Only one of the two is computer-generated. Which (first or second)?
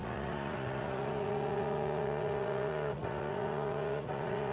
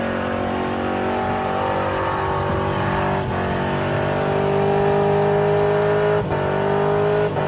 first